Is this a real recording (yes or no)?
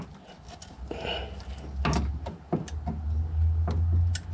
yes